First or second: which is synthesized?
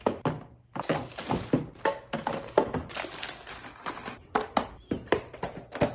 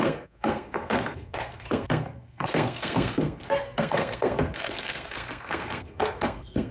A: second